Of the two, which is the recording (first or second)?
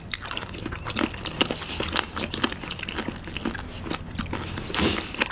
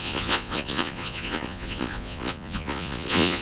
first